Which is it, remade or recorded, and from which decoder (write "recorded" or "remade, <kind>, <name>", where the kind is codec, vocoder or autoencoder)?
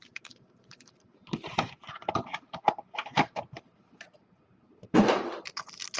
remade, vocoder, BigVGAN v2